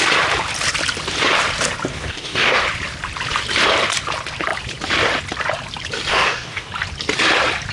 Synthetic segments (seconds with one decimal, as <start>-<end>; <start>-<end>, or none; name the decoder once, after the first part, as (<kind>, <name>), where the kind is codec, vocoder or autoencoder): 1.9-2.6 (codec, DAC); 6.1-6.7